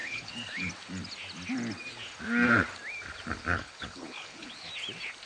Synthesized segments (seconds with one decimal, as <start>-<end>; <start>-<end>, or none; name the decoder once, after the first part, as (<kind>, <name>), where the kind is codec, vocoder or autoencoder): 0.0-0.7 (codec, HILCodec); 3.5-4.7